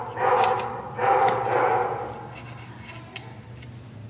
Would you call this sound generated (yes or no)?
no